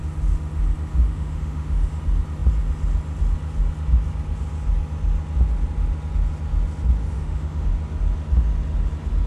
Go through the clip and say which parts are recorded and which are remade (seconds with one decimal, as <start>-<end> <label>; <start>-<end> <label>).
0.0-0.9 recorded; 0.9-2.0 remade; 2.0-7.0 recorded; 7.0-7.7 remade; 7.7-9.3 recorded